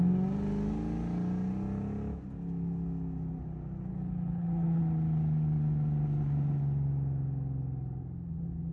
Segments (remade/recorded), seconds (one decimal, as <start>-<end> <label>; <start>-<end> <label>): 0.0-3.9 recorded; 3.9-4.8 remade; 4.8-8.7 recorded